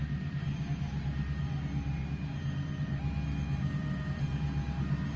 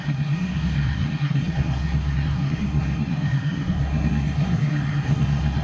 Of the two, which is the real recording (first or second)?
first